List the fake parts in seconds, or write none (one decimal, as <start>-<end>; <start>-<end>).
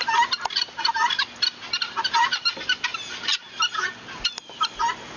none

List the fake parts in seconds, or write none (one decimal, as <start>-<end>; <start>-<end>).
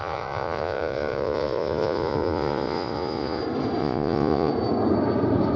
0.0-3.4; 3.8-4.5